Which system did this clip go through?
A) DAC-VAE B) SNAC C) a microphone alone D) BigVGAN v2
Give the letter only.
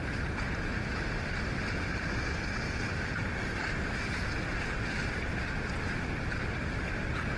C